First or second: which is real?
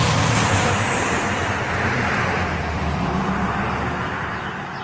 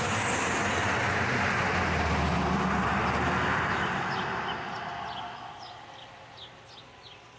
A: second